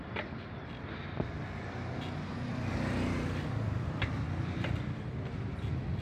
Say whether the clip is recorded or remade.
recorded